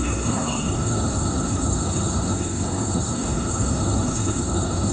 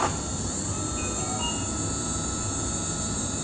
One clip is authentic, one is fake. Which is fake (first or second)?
first